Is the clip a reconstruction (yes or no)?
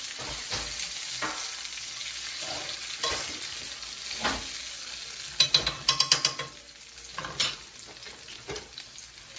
no